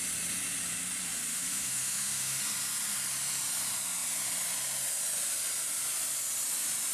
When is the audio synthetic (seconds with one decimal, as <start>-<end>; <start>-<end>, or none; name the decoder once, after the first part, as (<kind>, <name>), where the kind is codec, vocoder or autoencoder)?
1.3-2.4 (autoencoder, DAC-VAE)

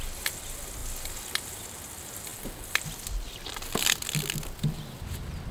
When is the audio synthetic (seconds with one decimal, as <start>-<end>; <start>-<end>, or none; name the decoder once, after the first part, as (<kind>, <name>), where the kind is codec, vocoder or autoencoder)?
none